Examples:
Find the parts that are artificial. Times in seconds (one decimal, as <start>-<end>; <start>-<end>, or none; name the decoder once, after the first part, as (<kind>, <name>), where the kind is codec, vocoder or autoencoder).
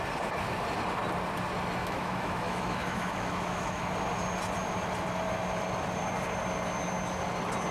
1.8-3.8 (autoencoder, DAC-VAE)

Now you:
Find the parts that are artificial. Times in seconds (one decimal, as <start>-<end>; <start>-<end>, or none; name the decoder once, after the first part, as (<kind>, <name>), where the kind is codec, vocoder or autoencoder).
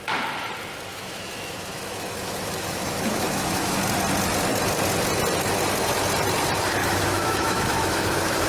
0.9-3.8 (autoencoder, DAC-VAE); 6.8-8.5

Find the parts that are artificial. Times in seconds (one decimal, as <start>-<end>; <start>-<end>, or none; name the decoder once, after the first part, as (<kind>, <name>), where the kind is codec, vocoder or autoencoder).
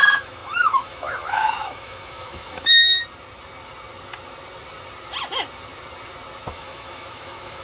0.0-3.0 (autoencoder, DAC-VAE); 6.5-7.6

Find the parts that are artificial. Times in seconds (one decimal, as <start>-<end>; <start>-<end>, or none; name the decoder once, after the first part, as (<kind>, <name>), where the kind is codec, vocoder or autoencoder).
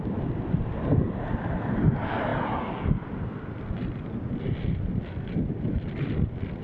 none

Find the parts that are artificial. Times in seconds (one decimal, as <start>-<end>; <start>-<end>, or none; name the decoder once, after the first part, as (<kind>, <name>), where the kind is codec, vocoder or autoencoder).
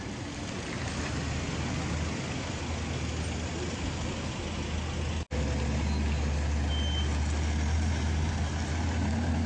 none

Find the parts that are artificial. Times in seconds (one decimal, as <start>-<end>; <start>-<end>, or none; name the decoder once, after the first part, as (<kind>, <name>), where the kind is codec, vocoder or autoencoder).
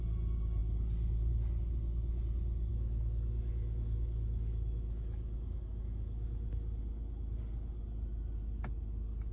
2.7-6.5 (autoencoder, DAC-VAE)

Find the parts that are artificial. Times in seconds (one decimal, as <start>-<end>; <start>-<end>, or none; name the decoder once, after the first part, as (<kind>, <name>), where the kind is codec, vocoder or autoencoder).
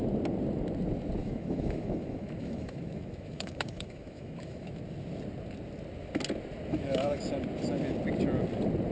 1.2-4.8 (autoencoder, DAC-VAE); 6.7-7.2